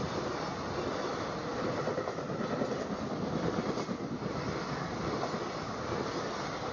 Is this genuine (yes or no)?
yes